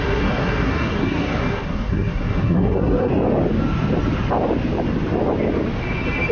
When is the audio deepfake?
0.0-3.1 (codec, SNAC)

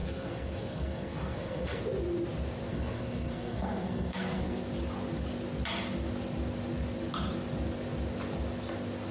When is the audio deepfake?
0.0-1.8 (codec, SNAC); 2.7-4.6

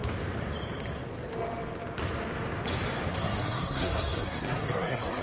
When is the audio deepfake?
3.1-5.2 (codec, SNAC)

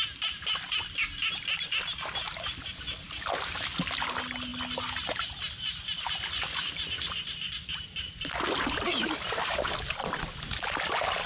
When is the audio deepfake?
none